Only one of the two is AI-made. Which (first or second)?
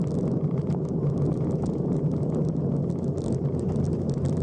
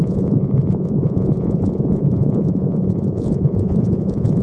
second